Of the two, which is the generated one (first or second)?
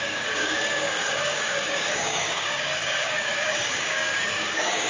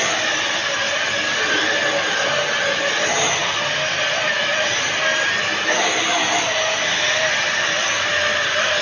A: first